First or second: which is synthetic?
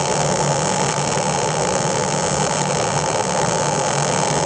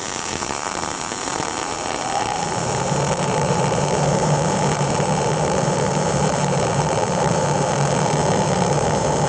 second